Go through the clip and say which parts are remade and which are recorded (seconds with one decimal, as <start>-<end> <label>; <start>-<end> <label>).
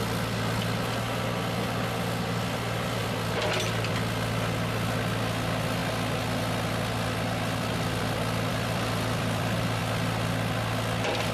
0.0-3.0 recorded; 3.0-3.9 remade; 3.9-8.5 recorded; 8.5-9.8 remade; 9.8-11.3 recorded